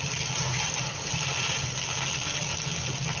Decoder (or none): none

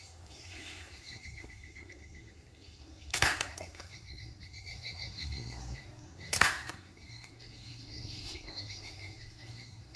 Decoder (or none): codec, SNAC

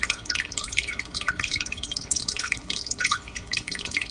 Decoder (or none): codec, HILCodec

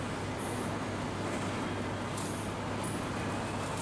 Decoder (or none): none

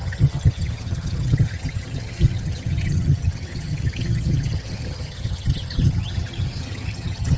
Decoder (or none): vocoder, HiFi-GAN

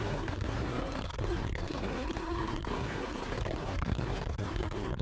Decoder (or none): codec, SNAC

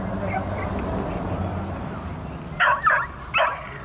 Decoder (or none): none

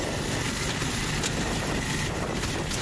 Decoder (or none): none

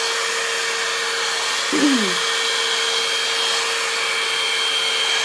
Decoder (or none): none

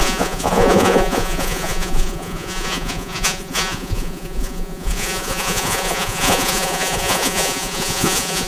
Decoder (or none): vocoder, Vocos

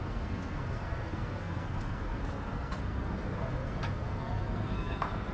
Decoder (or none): codec, SNAC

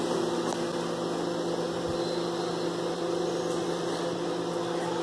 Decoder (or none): none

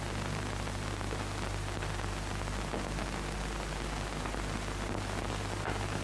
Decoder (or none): none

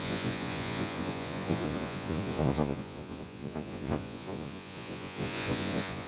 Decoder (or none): vocoder, Vocos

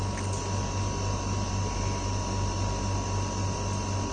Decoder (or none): none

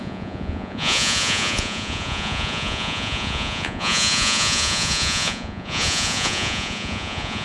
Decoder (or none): vocoder, Vocos